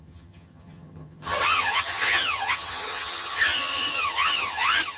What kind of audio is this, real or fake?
fake